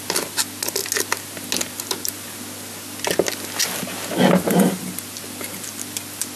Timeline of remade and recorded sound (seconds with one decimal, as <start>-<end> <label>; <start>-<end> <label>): 0.0-6.4 recorded